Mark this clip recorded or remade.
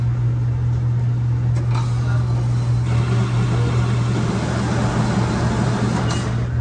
recorded